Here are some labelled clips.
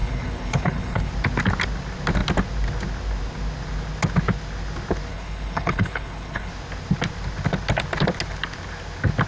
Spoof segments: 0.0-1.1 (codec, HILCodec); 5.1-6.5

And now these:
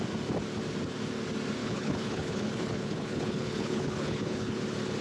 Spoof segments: 1.6-4.6 (codec, HILCodec)